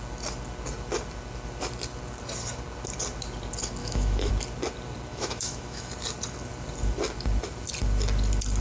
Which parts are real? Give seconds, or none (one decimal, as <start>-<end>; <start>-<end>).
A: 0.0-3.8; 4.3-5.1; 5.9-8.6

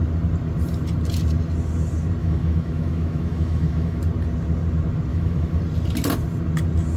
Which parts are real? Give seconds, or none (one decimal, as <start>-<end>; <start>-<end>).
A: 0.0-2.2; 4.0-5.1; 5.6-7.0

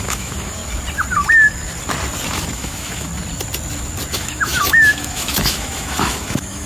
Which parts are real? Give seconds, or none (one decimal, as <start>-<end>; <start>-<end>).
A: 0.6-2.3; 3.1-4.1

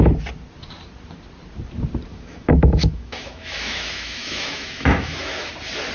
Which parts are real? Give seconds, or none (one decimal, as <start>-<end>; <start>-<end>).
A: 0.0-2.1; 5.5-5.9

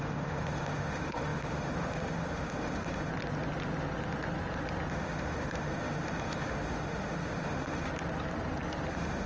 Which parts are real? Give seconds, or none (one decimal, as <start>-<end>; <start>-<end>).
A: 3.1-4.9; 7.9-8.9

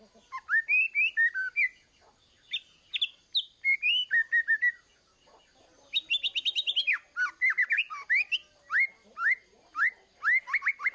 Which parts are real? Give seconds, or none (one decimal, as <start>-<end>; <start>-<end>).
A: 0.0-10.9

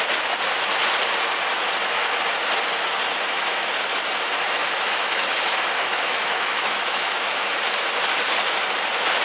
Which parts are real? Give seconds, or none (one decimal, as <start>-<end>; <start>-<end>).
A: 0.0-4.6; 5.4-5.9; 7.6-9.2